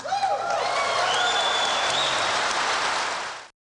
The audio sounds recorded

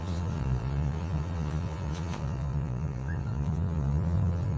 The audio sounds remade